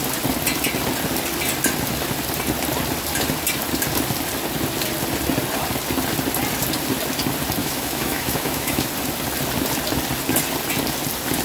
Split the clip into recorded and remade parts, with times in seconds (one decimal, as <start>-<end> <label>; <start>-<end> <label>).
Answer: 0.0-7.6 recorded; 7.6-8.9 remade; 8.9-11.4 recorded